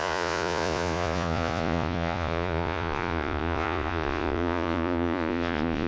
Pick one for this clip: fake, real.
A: fake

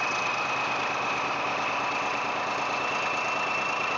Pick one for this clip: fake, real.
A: real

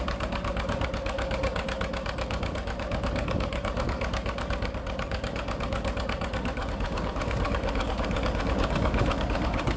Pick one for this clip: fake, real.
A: fake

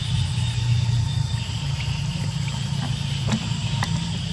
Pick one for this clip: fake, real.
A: real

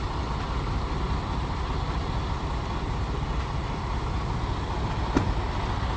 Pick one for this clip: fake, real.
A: real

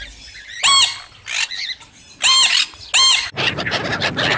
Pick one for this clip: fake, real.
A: real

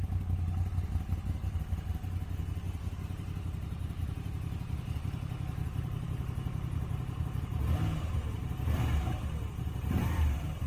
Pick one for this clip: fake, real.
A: real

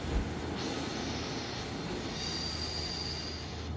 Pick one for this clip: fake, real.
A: real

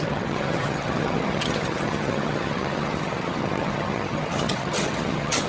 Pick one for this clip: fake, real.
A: fake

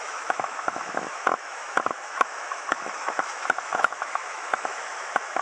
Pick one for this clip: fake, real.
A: fake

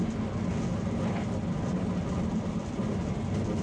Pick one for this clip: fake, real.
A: real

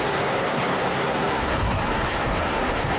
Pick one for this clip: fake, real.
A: fake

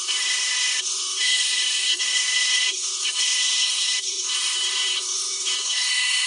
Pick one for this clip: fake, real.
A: fake